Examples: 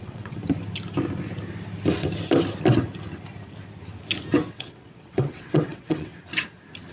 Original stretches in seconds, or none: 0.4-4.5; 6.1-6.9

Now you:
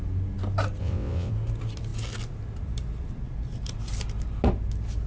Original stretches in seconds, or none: 0.0-0.8; 1.3-5.1

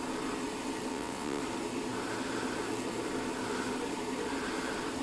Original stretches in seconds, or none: 0.0-0.9; 1.4-5.0

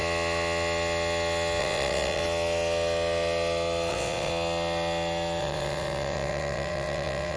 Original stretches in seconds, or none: 0.0-1.6; 2.2-3.9; 4.3-5.4